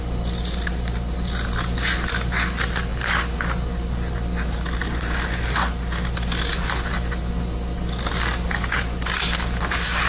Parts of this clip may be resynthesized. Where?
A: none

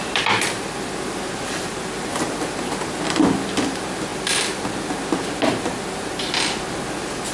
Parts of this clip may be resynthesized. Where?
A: none

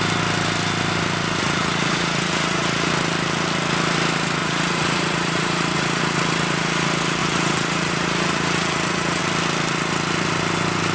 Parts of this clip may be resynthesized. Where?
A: 1.4-2.9 (vocoder, Vocos); 4.4-6.0; 7.2-9.2

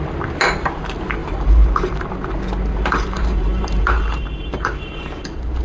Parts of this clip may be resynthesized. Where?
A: 1.2-2.1 (vocoder, BigVGAN v2); 2.7-5.6

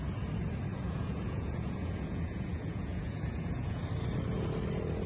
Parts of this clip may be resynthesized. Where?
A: 0.7-3.8 (vocoder, Vocos)

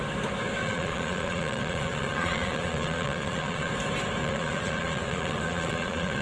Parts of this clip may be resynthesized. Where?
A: 0.6-3.7 (vocoder, Vocos); 4.2-6.2